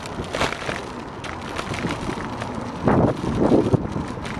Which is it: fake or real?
real